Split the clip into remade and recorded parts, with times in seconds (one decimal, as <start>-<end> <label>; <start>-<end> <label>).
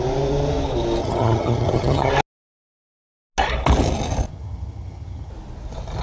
0.0-1.0 recorded; 1.0-2.1 remade; 2.1-4.3 recorded; 4.3-5.3 remade; 5.3-6.0 recorded